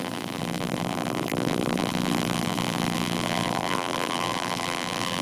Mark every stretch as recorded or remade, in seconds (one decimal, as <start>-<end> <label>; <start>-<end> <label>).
0.0-5.2 remade